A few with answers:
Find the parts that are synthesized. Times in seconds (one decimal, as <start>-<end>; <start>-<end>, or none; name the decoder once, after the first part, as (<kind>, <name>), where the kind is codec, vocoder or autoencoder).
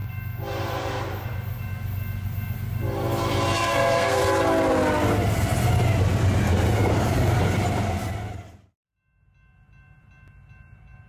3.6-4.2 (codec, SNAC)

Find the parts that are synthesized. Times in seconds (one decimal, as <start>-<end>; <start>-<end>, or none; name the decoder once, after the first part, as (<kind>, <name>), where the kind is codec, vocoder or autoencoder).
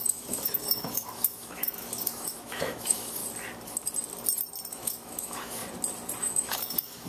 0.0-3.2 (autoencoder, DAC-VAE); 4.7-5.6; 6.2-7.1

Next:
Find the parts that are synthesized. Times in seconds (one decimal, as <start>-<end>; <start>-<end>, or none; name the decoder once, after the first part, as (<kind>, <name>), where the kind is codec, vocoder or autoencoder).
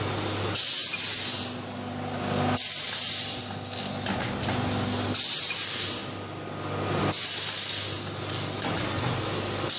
none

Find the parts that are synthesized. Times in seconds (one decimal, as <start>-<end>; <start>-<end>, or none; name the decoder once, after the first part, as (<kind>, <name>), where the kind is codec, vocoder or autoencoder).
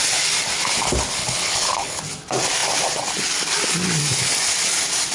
1.2-2.0 (codec, HILCodec)